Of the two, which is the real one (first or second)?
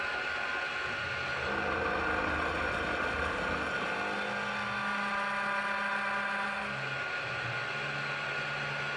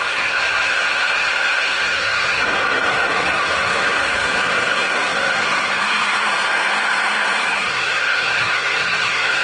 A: first